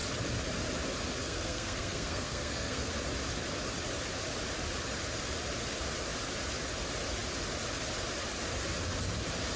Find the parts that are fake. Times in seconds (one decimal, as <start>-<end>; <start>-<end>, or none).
1.2-2.9